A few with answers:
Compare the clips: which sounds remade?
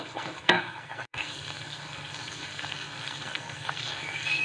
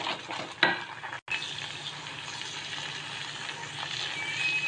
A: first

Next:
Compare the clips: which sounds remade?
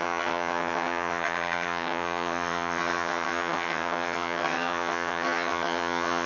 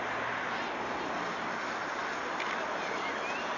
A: first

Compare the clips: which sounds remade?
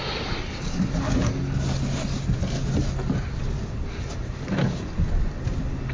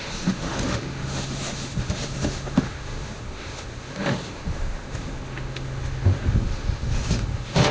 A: second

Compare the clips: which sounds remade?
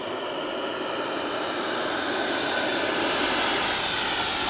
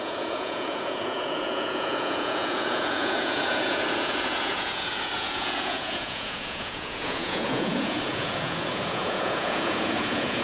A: second